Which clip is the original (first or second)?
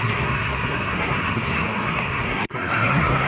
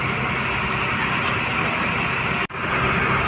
second